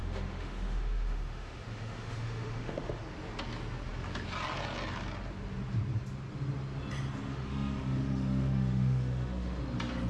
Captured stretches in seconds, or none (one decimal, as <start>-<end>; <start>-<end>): 3.0-7.3; 9.6-10.1